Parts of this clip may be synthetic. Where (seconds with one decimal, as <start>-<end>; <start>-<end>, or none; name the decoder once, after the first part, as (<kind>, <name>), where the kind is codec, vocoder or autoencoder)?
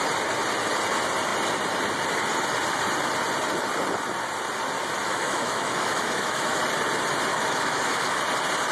5.0-6.6 (autoencoder, DAC-VAE); 7.3-8.2